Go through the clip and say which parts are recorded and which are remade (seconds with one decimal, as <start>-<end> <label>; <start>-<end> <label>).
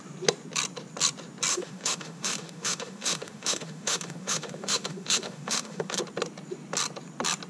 0.0-1.5 recorded; 1.5-6.0 remade; 6.0-7.5 recorded